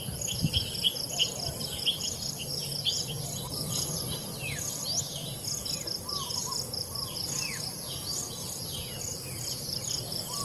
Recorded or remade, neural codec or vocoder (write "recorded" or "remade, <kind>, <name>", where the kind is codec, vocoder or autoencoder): recorded